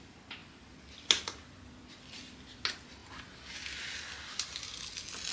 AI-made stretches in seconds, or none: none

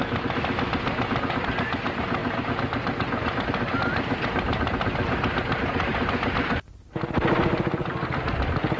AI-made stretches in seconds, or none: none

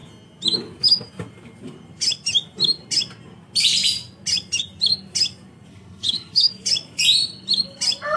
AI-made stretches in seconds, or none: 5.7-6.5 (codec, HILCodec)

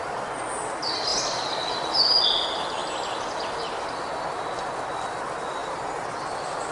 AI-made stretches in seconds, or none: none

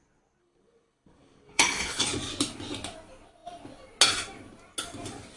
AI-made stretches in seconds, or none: 0.4-2.0 (codec, HILCodec)